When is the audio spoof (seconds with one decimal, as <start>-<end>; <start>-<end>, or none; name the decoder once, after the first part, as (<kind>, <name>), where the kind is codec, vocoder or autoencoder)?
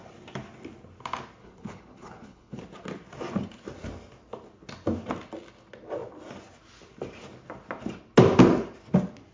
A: 1.4-2.6 (codec, HILCodec)